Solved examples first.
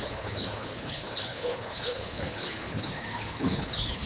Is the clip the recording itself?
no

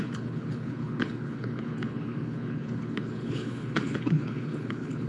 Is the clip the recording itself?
no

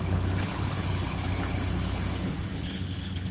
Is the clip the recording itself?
no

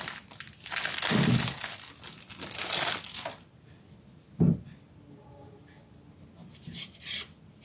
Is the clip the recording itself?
yes